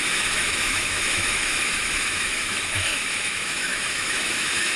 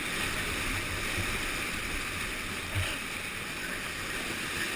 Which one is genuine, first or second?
second